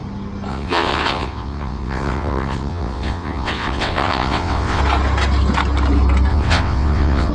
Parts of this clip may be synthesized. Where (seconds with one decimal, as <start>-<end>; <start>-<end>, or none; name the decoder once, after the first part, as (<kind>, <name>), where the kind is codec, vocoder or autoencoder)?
0.5-4.8 (vocoder, WaveNeXt); 6.3-7.3